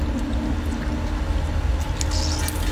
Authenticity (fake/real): real